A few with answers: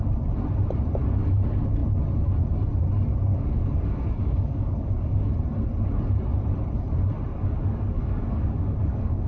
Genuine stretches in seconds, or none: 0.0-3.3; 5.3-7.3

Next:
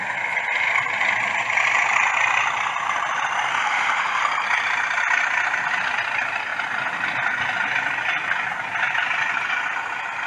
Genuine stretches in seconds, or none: 0.0-3.5; 4.2-10.3